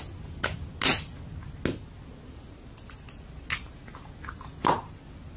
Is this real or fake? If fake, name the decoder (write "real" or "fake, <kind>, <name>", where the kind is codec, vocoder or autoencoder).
real